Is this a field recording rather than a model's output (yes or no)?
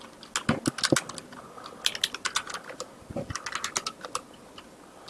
yes